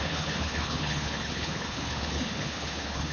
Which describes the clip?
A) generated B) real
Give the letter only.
A